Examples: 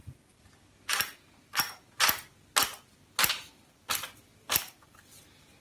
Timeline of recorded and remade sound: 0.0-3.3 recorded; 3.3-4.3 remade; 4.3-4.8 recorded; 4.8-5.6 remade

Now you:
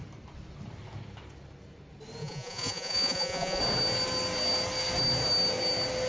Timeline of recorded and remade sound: 0.0-2.2 recorded; 2.2-3.6 remade; 3.6-6.1 recorded

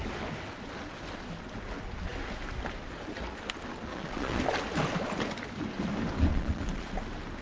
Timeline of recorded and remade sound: 0.0-3.9 recorded; 3.9-4.4 remade; 4.4-6.3 recorded; 6.3-6.9 remade; 6.9-7.4 recorded

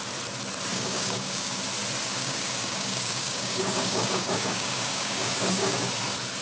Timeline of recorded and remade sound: 0.0-0.7 recorded; 0.7-1.6 remade; 1.6-2.1 recorded; 2.1-5.9 remade; 5.9-6.4 recorded

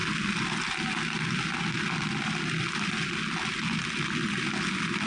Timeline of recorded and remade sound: 0.0-5.1 recorded

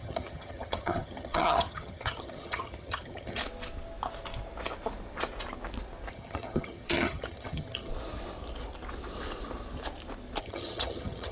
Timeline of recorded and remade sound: 0.0-3.4 remade; 3.4-6.1 recorded; 6.1-7.9 remade; 7.9-10.4 recorded; 10.4-11.3 remade

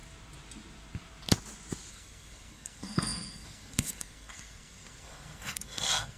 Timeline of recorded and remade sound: 0.0-1.9 recorded; 1.9-6.2 remade

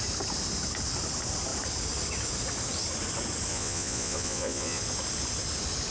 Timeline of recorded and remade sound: 0.0-3.5 recorded; 3.5-4.8 remade; 4.8-5.9 recorded